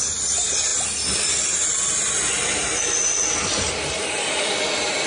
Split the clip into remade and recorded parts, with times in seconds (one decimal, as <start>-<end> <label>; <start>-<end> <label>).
0.0-5.1 recorded